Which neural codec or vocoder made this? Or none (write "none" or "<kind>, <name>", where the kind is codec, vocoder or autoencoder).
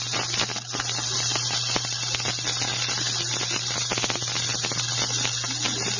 none